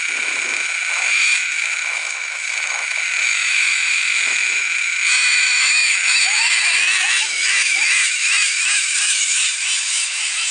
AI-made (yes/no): yes